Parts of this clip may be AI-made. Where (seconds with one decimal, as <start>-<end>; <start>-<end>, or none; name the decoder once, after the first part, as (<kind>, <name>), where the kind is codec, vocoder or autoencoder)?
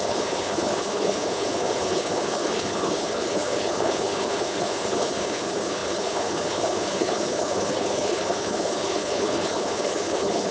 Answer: 0.0-10.5 (codec, HILCodec)